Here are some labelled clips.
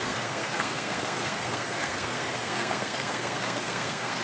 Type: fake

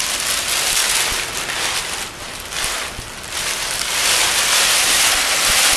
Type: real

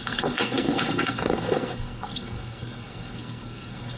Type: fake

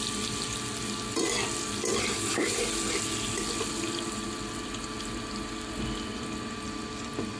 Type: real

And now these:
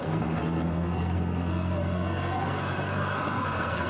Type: fake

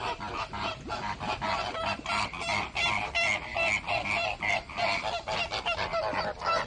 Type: real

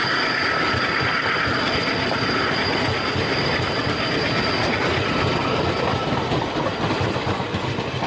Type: real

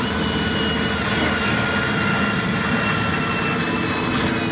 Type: real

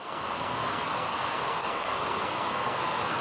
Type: fake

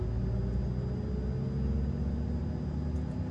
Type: real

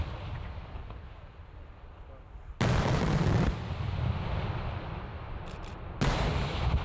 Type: real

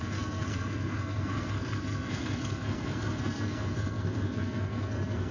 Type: fake